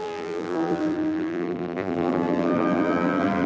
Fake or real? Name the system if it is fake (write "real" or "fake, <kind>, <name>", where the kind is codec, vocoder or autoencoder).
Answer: fake, vocoder, BigVGAN v2